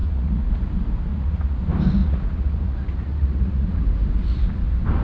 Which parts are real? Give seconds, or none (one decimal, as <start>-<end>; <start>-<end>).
0.5-1.1; 1.6-2.0; 3.8-5.0